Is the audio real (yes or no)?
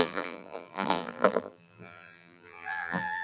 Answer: no